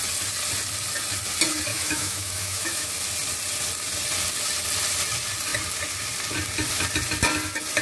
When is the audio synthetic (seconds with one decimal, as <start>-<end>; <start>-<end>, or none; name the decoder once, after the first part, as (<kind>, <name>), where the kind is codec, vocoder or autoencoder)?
1.7-2.9 (autoencoder, DAC-VAE)

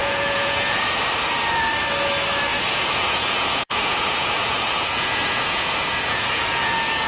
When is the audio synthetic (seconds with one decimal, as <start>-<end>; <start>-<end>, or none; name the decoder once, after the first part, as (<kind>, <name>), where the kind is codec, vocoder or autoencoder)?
0.0-0.8 (vocoder, Vocos); 2.5-7.1

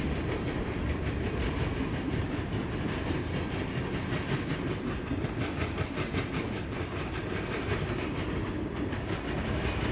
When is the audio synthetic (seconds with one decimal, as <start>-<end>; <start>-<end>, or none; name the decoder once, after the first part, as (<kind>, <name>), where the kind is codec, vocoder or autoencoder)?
5.6-9.2 (vocoder, BigVGAN v2)

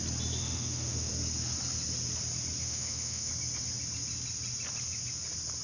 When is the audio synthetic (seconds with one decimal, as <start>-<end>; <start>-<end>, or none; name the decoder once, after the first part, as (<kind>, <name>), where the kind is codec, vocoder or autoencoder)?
0.4-1.1 (autoencoder, DAC-VAE); 2.6-3.3